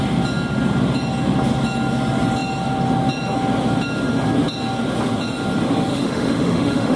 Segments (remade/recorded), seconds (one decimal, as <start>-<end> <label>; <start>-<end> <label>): 0.0-5.9 recorded; 5.9-7.0 remade